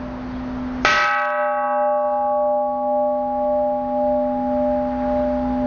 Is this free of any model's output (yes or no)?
yes